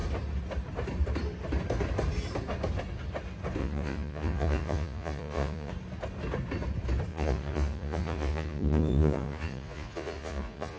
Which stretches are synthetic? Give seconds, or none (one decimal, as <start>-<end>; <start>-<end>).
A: 3.6-5.7; 7.1-10.8